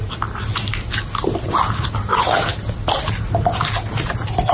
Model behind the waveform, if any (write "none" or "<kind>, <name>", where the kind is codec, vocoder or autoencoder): none